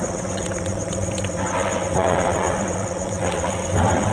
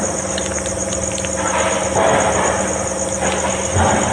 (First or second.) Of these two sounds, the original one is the second